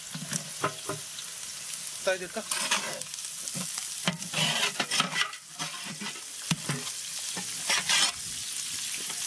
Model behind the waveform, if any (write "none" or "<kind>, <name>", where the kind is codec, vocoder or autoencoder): none